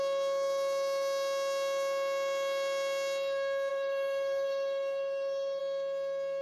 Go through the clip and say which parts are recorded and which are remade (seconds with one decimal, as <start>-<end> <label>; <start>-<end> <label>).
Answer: 0.0-3.7 recorded; 3.7-5.6 remade; 5.6-6.4 recorded